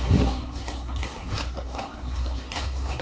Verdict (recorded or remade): remade